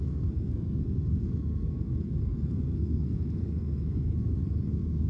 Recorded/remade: remade